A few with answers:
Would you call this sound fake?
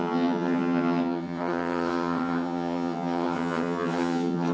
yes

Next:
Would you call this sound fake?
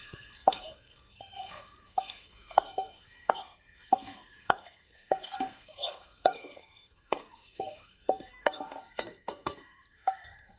yes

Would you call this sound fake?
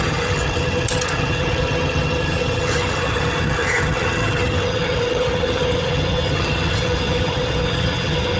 yes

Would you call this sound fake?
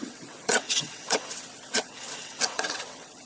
yes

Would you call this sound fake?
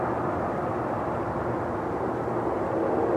no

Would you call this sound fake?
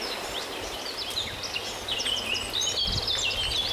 no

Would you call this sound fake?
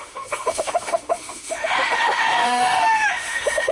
yes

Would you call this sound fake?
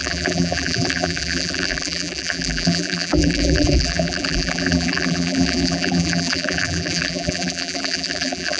yes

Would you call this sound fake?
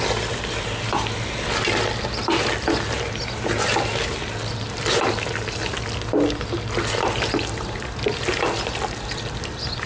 no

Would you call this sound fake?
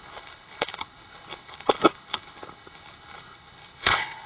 yes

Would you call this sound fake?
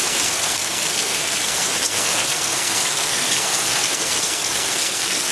yes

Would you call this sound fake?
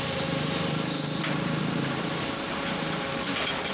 no